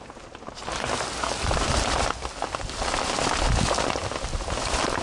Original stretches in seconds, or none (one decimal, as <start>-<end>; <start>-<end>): 0.0-5.0